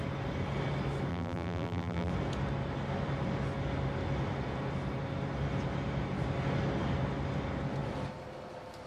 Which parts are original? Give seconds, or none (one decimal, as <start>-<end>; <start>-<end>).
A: 0.0-1.1; 2.1-8.9